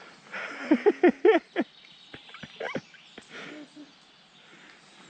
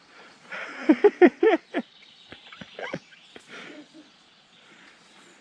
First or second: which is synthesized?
second